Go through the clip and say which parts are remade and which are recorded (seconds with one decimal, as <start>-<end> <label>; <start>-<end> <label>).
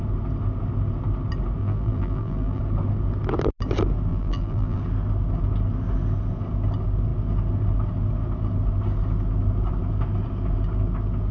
0.0-1.6 recorded; 1.6-2.6 remade; 2.6-4.1 recorded; 4.1-4.8 remade; 4.8-11.3 recorded